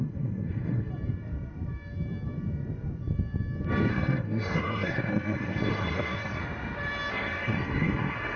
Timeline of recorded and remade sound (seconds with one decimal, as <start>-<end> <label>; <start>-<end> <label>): 0.0-0.9 remade; 0.9-3.9 recorded; 3.9-6.4 remade; 6.4-7.1 recorded; 7.1-8.4 remade